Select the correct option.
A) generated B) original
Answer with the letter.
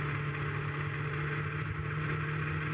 B